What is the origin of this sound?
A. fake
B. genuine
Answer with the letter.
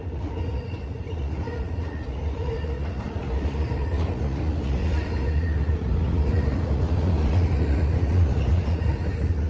A